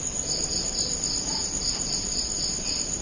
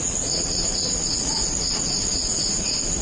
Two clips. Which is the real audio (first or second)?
first